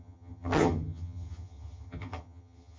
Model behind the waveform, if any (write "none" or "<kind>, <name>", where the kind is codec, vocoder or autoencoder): vocoder, HiFi-GAN